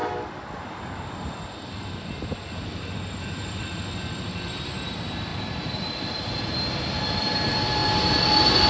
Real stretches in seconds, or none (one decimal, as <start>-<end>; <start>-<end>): 0.0-2.5; 7.8-8.7